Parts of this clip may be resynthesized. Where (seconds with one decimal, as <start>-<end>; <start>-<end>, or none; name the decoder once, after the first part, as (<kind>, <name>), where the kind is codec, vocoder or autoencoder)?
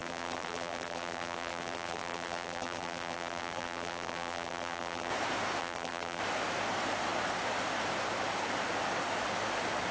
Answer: 0.0-5.1 (vocoder, BigVGAN v2); 5.6-6.2